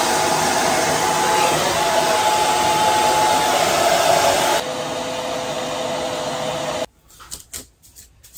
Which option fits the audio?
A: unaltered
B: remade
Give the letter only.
A